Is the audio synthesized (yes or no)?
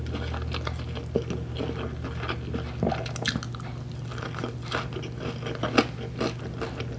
no